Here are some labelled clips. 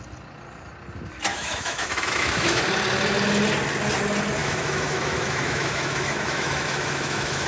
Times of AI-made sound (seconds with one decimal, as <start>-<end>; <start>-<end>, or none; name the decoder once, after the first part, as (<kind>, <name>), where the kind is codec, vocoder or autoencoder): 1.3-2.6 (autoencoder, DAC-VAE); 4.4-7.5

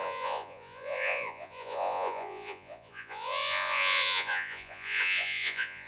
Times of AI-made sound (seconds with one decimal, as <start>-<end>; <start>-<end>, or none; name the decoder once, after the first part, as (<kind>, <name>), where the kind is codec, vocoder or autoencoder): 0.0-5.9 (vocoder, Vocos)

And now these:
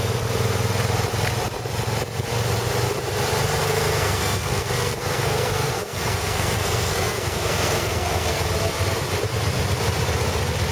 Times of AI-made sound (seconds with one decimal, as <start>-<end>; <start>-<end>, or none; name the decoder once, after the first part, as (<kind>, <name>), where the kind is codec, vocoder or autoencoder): 3.6-8.4 (codec, SNAC)